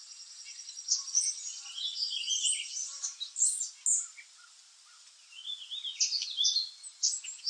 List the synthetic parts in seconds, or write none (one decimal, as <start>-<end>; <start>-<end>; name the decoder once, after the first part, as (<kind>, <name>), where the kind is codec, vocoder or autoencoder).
none